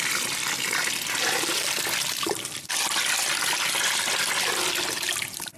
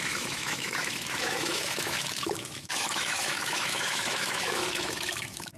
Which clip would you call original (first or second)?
first